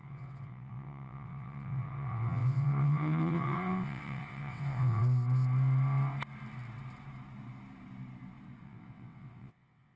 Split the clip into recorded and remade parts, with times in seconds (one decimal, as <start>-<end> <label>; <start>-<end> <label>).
0.0-5.0 remade; 5.0-8.6 recorded; 8.6-10.0 remade